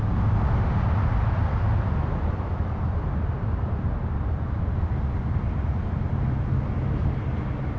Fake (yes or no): no